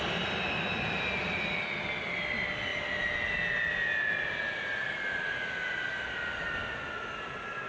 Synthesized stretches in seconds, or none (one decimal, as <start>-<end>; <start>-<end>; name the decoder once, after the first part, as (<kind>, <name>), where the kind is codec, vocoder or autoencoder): none